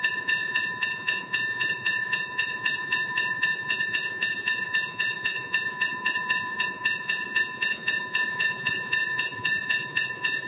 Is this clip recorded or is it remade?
remade